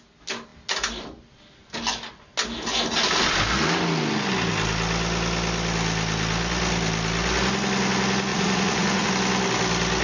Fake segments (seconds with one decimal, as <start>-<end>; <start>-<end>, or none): 8.3-9.1